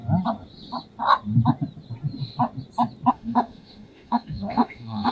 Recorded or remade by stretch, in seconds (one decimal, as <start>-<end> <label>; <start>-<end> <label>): 0.0-3.1 recorded; 3.1-5.1 remade